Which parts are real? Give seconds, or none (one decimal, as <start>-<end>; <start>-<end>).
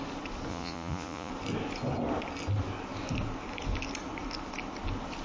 0.0-0.5; 1.3-5.2